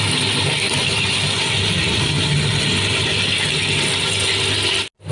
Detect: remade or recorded recorded